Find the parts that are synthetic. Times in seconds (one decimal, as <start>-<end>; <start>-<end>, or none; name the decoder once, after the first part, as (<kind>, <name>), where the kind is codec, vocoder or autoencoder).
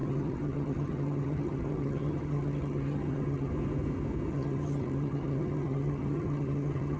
0.0-3.5 (vocoder, HiFi-GAN); 4.3-7.0